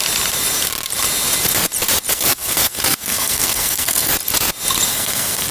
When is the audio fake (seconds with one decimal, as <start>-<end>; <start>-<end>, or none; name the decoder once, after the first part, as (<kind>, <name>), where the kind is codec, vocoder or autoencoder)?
2.1-4.1 (codec, SNAC); 4.9-5.5